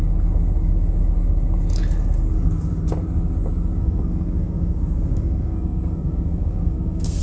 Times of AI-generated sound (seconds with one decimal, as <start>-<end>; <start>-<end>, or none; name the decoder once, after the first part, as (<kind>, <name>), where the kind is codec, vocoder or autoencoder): 3.8-7.2 (codec, SNAC)